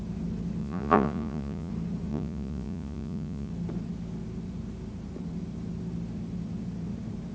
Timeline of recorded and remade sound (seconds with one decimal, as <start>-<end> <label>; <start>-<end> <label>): 0.0-0.6 recorded; 0.6-1.7 remade; 1.7-2.1 recorded; 2.1-3.5 remade; 3.5-7.3 recorded